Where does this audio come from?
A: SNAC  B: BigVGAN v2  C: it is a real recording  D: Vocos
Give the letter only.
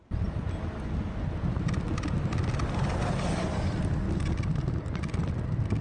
C